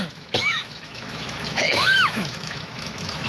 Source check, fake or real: fake